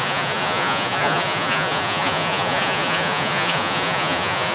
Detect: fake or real fake